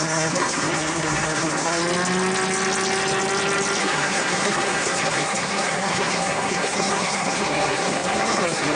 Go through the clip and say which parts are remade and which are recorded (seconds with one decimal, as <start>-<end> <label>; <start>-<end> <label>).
0.0-1.8 remade; 1.8-3.8 recorded; 3.8-8.8 remade